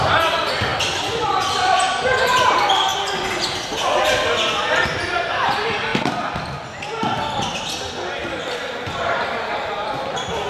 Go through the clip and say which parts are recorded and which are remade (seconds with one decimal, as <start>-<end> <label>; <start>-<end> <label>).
0.0-2.9 remade; 2.9-4.6 recorded; 4.6-5.9 remade; 5.9-8.6 recorded; 8.6-10.5 remade